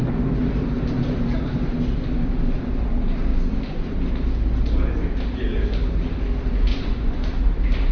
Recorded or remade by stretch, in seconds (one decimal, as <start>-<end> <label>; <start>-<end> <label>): 0.0-6.7 recorded; 6.7-7.3 remade; 7.3-7.9 recorded